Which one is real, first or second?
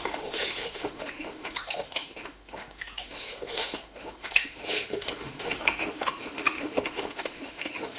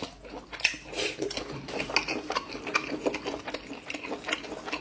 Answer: second